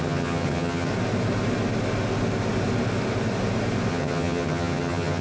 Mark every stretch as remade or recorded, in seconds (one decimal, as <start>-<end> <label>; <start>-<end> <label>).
0.0-0.9 remade; 0.9-3.9 recorded; 3.9-5.2 remade